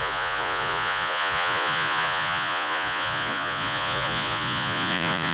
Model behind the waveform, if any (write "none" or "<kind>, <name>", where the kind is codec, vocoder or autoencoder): vocoder, Vocos